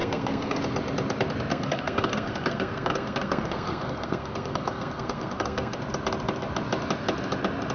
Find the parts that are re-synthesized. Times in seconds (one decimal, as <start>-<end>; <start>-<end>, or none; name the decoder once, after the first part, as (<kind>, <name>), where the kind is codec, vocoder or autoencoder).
0.0-0.6 (codec, SNAC); 1.5-5.8